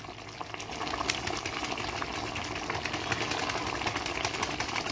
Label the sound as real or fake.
real